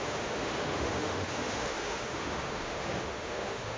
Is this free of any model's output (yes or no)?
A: no